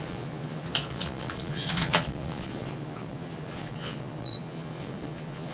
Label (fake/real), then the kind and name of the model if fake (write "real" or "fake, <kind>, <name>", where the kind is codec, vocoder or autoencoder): fake, vocoder, Vocos